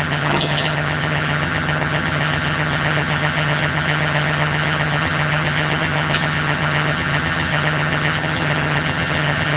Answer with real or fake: fake